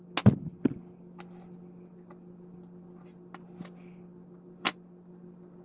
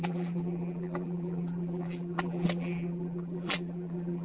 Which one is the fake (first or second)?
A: second